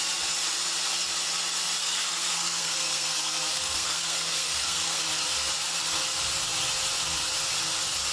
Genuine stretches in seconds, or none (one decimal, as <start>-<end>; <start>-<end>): 0.0-1.8; 5.0-8.1